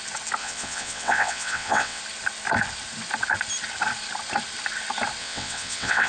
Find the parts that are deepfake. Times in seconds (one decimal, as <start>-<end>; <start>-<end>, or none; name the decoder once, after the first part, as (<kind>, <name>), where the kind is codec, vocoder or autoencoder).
0.4-2.0 (vocoder, WaveNeXt); 5.2-6.1